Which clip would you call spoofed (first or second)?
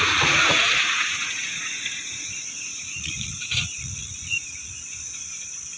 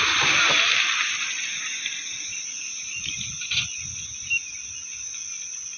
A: first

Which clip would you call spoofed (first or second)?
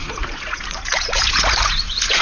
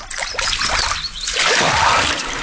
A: first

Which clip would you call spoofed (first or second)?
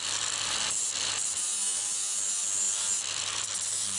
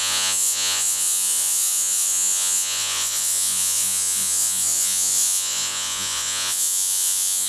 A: second